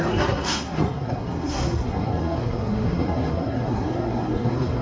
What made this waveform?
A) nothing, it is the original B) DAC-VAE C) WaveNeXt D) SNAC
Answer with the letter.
D